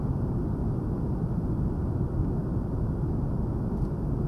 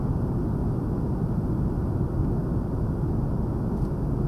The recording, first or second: second